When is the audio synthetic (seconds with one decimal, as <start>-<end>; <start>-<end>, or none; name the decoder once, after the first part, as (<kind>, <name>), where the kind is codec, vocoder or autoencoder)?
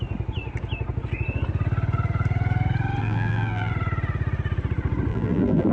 3.0-3.7 (vocoder, BigVGAN v2); 5.1-5.7